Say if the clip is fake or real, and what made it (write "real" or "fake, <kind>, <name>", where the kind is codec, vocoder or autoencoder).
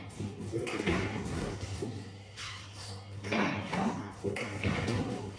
fake, codec, SNAC